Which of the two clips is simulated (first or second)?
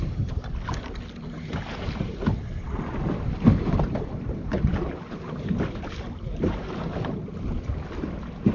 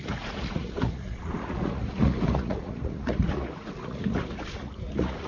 second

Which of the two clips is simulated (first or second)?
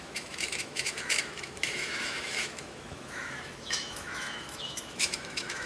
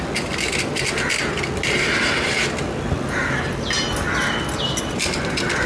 first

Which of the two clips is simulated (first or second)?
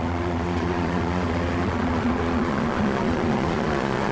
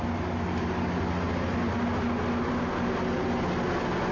first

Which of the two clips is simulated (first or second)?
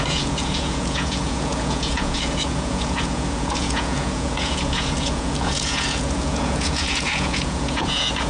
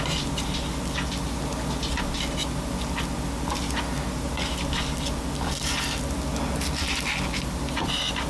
first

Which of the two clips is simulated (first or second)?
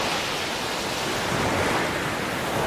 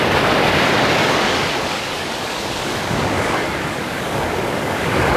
second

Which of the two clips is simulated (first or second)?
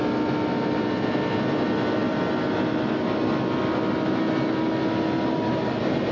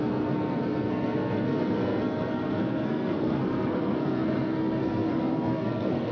second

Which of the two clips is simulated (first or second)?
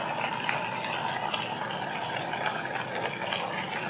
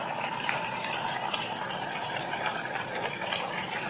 second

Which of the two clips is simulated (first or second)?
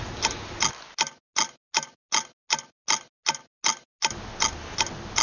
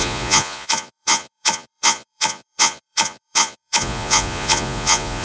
second